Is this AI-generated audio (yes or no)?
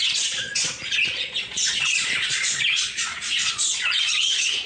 yes